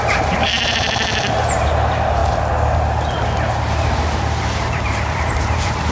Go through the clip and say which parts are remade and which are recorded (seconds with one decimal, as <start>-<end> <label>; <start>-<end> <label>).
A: 0.0-2.2 remade; 2.2-4.4 recorded; 4.4-5.9 remade